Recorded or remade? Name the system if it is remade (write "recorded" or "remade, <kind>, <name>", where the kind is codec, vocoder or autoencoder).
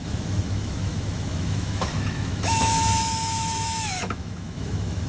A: remade, autoencoder, DAC-VAE